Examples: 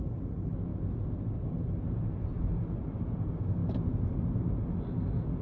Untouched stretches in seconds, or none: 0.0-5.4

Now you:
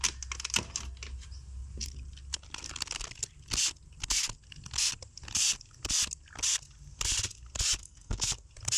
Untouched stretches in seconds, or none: 0.0-7.8; 8.3-8.8

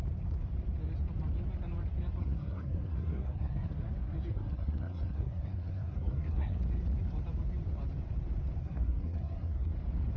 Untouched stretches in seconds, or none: 0.0-2.2; 3.7-4.3; 6.6-8.6; 9.7-10.2

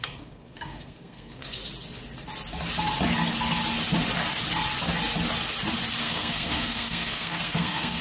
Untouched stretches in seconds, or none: 1.6-6.0

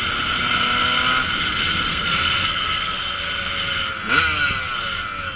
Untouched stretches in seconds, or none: 0.0-1.9; 3.5-5.4

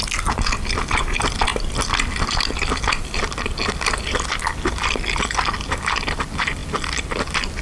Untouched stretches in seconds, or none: 0.0-7.6